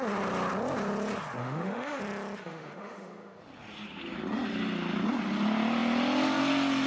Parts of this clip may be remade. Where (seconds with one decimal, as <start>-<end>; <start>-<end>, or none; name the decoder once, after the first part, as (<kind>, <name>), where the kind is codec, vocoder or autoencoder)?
1.4-2.0 (autoencoder, DAC-VAE); 2.4-3.4